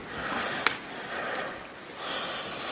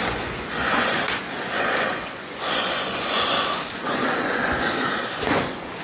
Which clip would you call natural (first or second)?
first